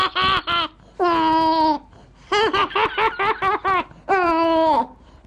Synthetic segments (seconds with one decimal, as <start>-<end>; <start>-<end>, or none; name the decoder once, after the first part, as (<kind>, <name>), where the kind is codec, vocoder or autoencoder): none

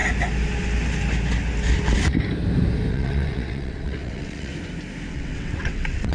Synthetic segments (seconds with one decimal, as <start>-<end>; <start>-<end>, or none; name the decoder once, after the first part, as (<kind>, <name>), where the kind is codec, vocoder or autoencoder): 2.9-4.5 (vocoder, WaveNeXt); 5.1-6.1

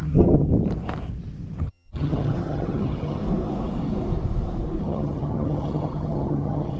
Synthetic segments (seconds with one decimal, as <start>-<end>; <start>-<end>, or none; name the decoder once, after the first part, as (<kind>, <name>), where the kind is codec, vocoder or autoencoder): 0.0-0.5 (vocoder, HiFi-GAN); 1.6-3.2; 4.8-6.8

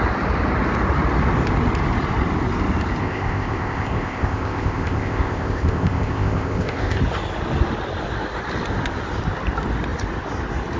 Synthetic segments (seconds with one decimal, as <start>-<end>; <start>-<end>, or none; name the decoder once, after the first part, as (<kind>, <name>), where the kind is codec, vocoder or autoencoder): 3.0-7.0 (codec, ZipCodec)

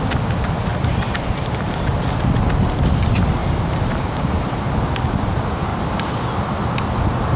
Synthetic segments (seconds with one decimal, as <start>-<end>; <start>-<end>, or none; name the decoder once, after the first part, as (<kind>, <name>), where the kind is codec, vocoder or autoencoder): 0.7-1.9 (vocoder, BigVGAN v2); 3.4-4.7

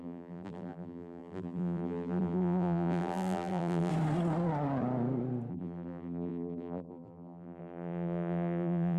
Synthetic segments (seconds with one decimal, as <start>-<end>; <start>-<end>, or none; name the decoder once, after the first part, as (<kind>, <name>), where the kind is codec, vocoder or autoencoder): 0.0-3.9 (vocoder, BigVGAN v2); 5.5-9.0